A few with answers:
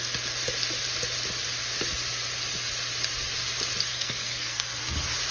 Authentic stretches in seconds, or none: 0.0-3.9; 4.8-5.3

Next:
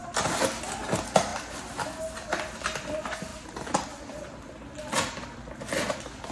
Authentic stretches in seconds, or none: 0.0-6.3

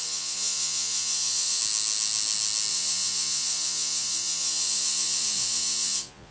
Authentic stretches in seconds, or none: 1.6-2.7